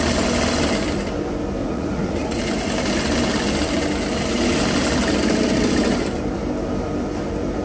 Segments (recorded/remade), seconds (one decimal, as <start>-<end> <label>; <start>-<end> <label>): 0.0-1.6 recorded; 1.6-2.4 remade; 2.4-7.6 recorded